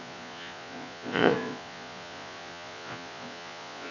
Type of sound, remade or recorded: remade